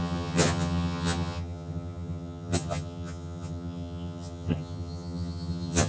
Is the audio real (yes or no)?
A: no